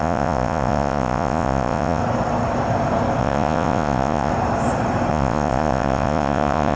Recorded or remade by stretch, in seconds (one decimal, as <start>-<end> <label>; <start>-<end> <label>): 0.0-2.0 remade; 2.0-3.2 recorded; 3.2-4.3 remade; 4.3-5.1 recorded; 5.1-6.8 remade